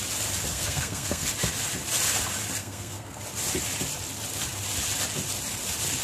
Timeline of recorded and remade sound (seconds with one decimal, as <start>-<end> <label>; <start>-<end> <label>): 0.0-0.5 recorded; 0.5-1.3 remade; 1.3-2.6 recorded; 2.6-3.2 remade; 3.2-6.0 recorded